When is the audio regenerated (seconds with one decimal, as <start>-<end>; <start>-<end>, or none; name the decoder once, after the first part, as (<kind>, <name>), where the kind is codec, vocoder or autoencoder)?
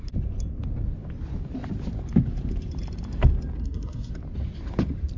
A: 3.6-4.1 (codec, SNAC)